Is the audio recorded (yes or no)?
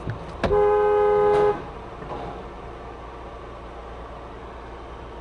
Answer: yes